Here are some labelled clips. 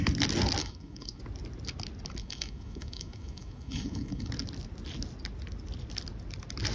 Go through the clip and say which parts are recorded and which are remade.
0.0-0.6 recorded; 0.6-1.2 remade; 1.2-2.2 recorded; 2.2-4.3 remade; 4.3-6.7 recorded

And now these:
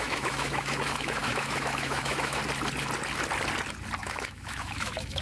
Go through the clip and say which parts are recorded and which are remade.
0.0-2.4 remade; 2.4-4.0 recorded; 4.0-5.2 remade